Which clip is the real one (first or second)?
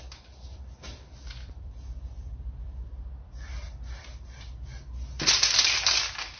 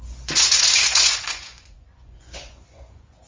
first